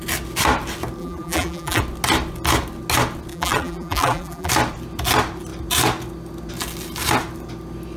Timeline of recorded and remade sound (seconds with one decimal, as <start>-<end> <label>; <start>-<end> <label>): 0.0-1.0 recorded; 1.0-1.8 remade; 1.8-3.3 recorded; 3.3-4.5 remade; 4.5-8.0 recorded